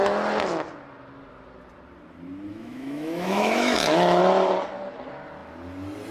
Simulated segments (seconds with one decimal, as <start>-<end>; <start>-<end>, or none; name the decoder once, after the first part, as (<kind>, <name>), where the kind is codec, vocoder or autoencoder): 2.5-4.2 (autoencoder, DAC-VAE)

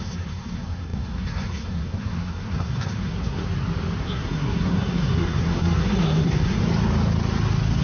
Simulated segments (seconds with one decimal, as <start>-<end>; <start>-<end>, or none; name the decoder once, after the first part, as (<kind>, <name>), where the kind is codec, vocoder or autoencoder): 0.0-3.4 (codec, SNAC); 4.0-6.6

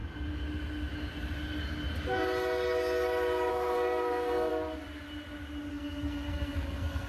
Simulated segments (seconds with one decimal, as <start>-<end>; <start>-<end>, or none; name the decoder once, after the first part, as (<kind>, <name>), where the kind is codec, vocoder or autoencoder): 3.5-4.5 (codec, SNAC); 5.7-7.1

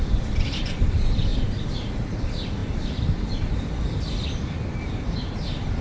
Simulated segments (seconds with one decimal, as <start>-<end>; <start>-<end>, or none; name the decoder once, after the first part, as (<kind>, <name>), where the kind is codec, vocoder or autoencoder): 0.0-1.3 (vocoder, BigVGAN v2); 1.9-5.8